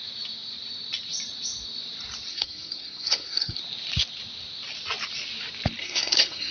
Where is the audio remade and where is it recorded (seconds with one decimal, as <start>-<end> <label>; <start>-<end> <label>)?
0.0-2.3 recorded; 2.3-3.6 remade; 3.6-5.8 recorded; 5.8-6.5 remade

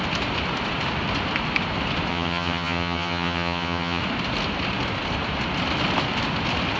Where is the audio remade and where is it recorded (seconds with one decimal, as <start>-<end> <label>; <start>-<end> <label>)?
0.0-2.1 recorded; 2.1-4.0 remade; 4.0-6.8 recorded